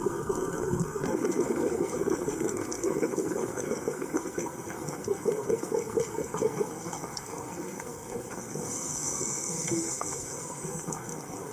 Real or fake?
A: fake